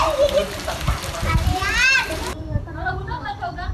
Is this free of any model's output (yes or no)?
no